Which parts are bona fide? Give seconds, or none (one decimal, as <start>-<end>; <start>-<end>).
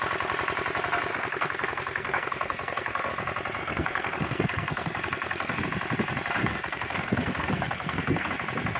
0.0-1.1; 3.1-3.6; 5.6-6.4; 8.3-8.8